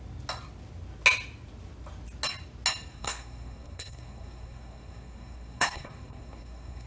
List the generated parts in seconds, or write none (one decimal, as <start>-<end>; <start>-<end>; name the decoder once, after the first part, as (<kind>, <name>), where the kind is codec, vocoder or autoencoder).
2.9-6.9 (codec, SNAC)